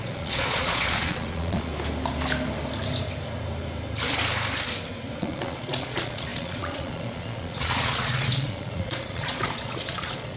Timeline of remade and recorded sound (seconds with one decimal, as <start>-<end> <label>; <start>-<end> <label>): 0.0-1.7 remade; 1.7-5.2 recorded; 5.2-10.4 remade